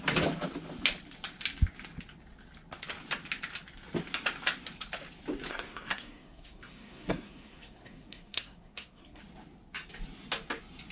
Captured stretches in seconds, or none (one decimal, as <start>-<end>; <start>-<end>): 0.0-5.5; 9.2-10.9